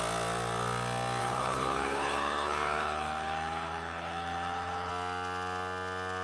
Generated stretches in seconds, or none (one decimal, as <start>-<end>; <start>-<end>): 1.2-4.9